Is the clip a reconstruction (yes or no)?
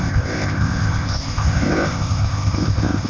yes